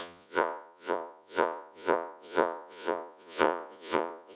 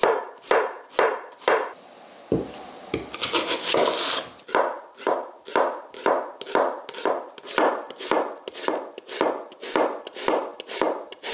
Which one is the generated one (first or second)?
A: first